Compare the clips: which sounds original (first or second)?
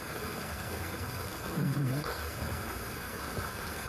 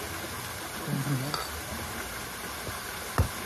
second